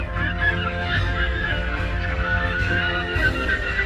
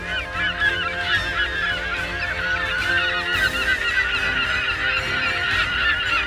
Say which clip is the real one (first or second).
second